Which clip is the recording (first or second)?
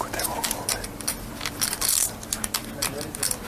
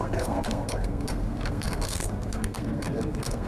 first